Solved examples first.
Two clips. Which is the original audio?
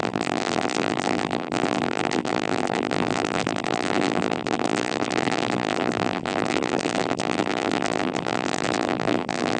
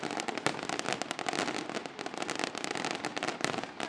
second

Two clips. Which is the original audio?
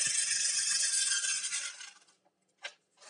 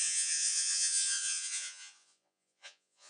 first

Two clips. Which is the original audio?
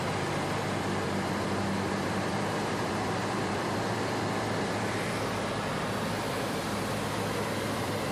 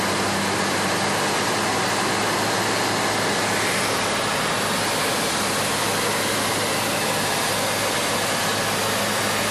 second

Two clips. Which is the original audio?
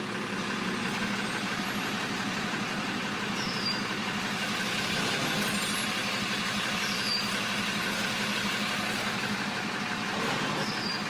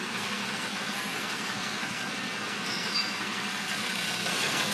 first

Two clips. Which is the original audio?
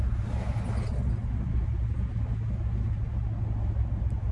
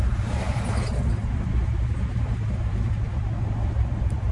first